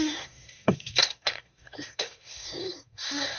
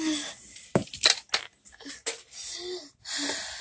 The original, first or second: second